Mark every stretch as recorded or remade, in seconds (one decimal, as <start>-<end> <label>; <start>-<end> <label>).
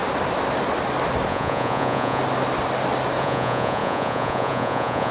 0.0-1.3 recorded; 1.3-2.2 remade; 2.2-3.2 recorded; 3.2-5.1 remade